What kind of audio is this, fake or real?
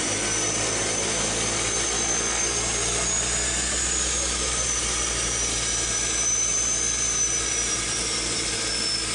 real